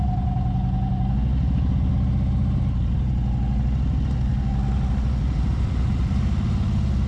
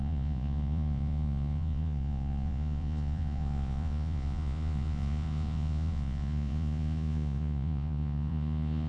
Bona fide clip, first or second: first